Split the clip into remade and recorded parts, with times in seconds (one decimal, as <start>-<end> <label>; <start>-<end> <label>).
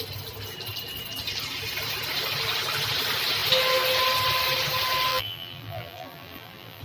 0.0-5.1 recorded; 5.1-6.8 remade